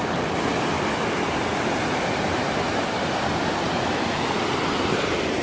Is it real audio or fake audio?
real